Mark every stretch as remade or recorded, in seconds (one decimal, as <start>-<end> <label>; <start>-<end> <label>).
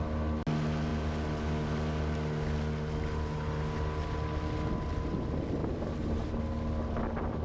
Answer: 0.0-5.6 recorded; 5.6-6.4 remade; 6.4-7.4 recorded